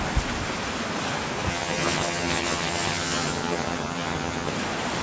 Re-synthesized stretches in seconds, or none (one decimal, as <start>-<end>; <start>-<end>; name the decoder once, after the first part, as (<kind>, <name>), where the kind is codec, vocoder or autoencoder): 1.5-4.5 (vocoder, HiFi-GAN)